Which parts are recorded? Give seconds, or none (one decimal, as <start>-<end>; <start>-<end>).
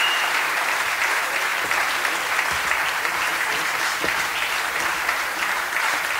1.5-2.7